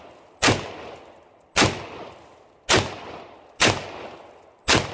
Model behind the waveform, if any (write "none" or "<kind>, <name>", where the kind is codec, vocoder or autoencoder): none